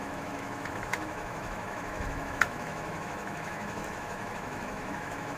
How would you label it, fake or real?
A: fake